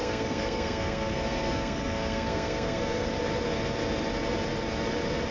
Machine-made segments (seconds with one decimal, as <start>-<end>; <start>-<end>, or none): 0.0-3.1

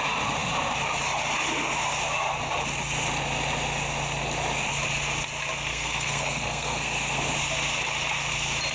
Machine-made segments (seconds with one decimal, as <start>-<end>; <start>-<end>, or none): 5.7-7.2